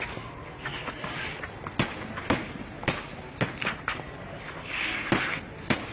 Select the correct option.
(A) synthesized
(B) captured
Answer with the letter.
B